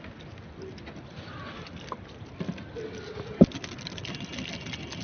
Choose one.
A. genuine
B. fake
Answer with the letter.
A